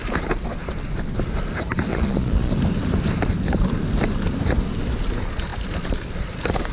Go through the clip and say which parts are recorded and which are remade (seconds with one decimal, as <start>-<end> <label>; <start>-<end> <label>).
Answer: 0.0-1.9 recorded; 1.9-2.5 remade; 2.5-6.7 recorded